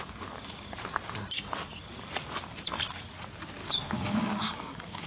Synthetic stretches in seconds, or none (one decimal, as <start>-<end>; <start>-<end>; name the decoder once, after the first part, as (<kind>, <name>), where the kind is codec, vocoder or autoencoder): 3.6-5.1 (codec, DAC)